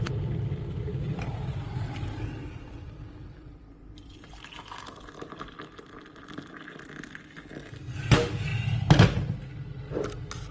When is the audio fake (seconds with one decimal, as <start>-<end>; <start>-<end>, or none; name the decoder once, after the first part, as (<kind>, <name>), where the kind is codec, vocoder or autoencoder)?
0.9-4.3 (vocoder, BigVGAN v2)